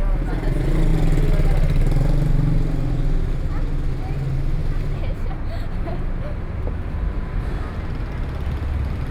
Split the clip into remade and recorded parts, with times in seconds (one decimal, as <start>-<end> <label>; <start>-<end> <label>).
0.0-9.1 recorded

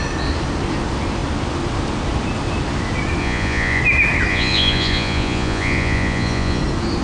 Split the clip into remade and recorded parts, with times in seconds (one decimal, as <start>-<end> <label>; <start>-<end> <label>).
0.0-3.2 recorded; 3.2-3.8 remade; 3.8-4.3 recorded; 4.3-6.6 remade; 6.6-7.0 recorded

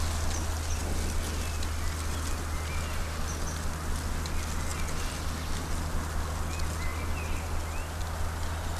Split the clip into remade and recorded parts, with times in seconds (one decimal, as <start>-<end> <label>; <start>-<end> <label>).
0.0-8.8 recorded

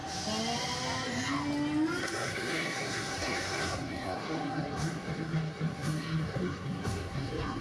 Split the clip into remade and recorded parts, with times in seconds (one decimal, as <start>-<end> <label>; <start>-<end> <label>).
0.0-2.0 recorded; 2.0-7.6 remade

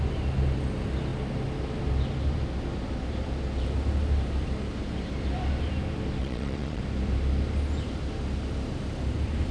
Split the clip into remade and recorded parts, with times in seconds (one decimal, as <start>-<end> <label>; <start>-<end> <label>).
0.0-6.2 recorded; 6.2-6.8 remade; 6.8-9.5 recorded